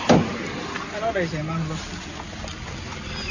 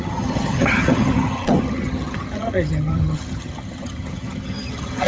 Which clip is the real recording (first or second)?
first